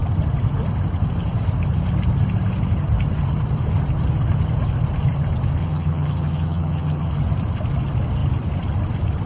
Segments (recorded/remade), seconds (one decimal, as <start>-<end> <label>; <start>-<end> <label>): 0.0-5.6 recorded; 5.6-7.1 remade; 7.1-9.3 recorded